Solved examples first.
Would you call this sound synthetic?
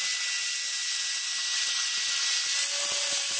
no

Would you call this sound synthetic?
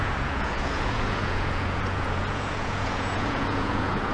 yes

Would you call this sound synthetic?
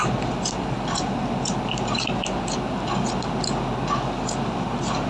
no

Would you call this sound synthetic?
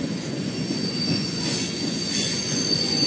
yes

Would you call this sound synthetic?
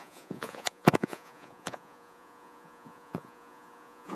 yes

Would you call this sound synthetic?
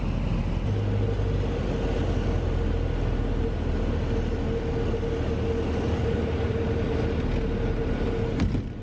no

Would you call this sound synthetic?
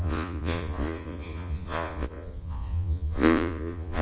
yes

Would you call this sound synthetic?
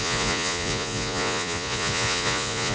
yes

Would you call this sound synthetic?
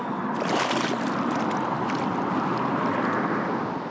no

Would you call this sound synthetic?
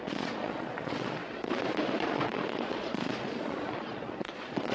yes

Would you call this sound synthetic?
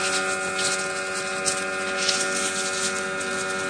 no